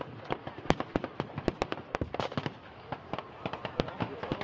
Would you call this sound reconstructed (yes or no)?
no